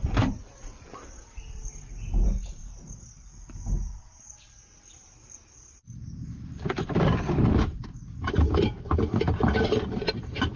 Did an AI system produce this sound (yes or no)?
no